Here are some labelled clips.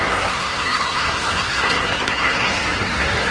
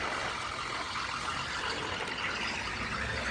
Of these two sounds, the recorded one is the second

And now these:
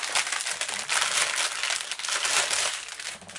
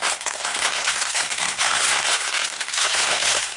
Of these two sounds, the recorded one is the first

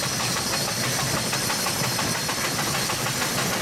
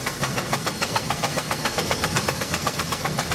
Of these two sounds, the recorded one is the first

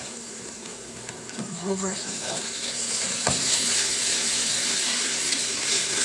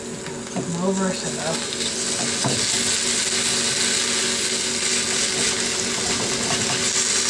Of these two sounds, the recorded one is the second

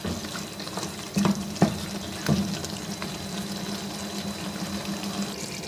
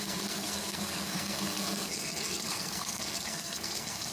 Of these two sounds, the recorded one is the first